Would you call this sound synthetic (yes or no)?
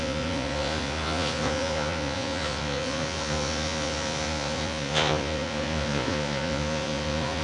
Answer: yes